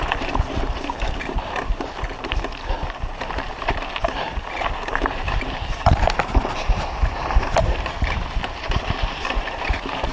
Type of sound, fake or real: fake